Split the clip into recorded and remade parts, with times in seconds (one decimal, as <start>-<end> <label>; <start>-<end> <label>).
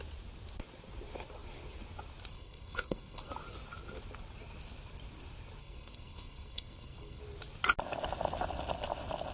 0.0-2.3 recorded; 2.3-3.3 remade; 3.3-5.6 recorded; 5.6-7.2 remade; 7.2-9.3 recorded